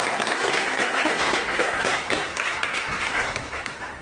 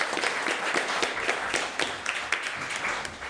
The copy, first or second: first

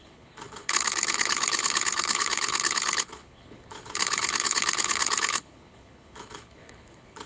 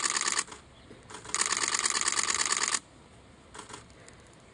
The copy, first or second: first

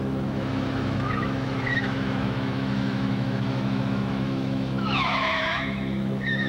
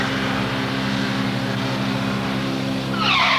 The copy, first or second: first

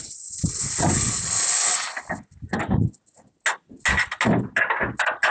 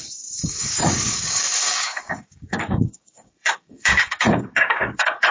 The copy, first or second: second